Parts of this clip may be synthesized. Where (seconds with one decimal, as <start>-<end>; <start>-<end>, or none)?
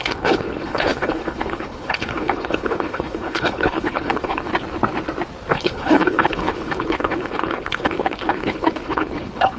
0.0-4.5; 5.5-9.6